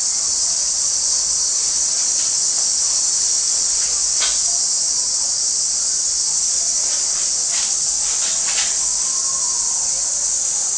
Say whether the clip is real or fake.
real